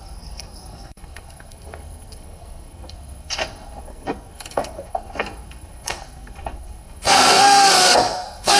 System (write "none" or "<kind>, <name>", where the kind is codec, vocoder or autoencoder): codec, SNAC